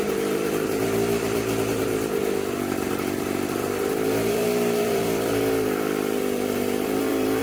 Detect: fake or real fake